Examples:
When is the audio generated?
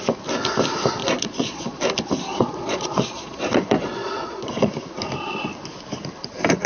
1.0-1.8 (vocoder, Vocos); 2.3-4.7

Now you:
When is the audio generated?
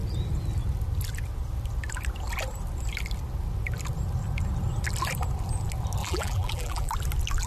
6.0-6.9 (vocoder, BigVGAN v2)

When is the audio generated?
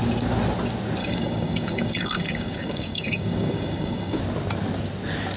1.0-4.2 (codec, DAC)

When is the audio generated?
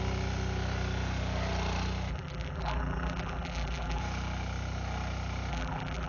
2.1-4.0 (vocoder, BigVGAN v2); 5.5-6.1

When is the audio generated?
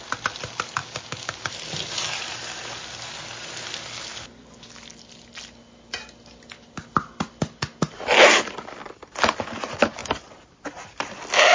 0.8-1.5 (codec, DAC)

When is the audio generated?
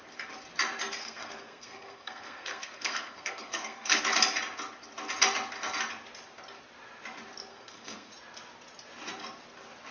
1.0-4.0 (codec, SNAC); 7.5-8.1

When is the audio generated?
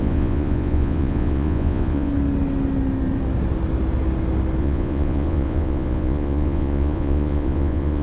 0.0-2.1 (vocoder, Vocos); 4.6-8.0